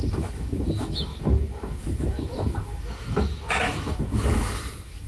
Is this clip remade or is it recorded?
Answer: remade